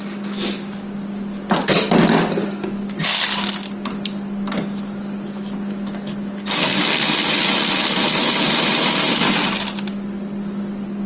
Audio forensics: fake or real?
real